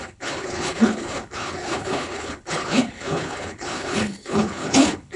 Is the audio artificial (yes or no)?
yes